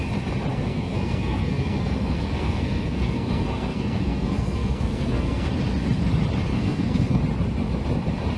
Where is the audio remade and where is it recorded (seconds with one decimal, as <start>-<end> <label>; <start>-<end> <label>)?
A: 0.0-0.5 recorded; 0.5-5.5 remade; 5.5-6.5 recorded; 6.5-7.2 remade; 7.2-8.4 recorded